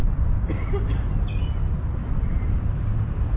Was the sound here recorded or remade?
recorded